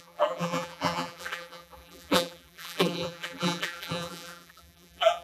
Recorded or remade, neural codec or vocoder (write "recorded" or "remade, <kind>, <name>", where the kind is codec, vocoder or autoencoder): remade, vocoder, BigVGAN v2